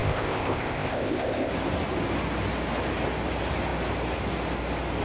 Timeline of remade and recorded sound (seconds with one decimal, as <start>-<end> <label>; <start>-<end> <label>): 0.0-1.5 remade; 1.5-5.0 recorded